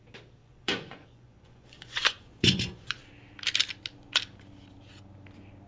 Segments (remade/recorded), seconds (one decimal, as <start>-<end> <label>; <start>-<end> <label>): 0.0-0.4 recorded; 0.4-3.0 remade; 3.0-5.7 recorded